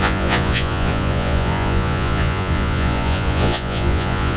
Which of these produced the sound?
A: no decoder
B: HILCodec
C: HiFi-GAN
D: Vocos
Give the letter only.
D